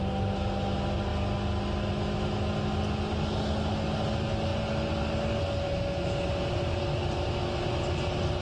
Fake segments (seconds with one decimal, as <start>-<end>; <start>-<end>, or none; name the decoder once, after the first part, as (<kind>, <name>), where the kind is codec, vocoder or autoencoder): none